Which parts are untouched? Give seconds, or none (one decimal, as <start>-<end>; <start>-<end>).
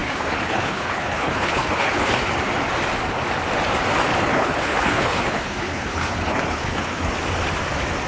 2.3-4.1; 7.1-8.1